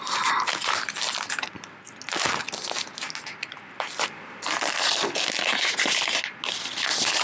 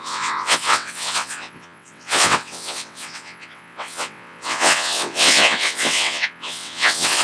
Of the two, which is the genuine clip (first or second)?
first